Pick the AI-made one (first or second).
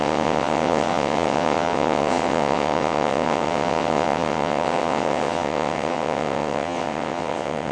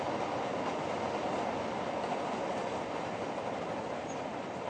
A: first